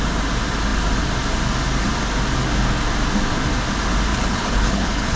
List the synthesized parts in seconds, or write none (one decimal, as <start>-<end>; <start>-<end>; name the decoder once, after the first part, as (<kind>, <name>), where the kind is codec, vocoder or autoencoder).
4.1-5.2 (codec, HILCodec)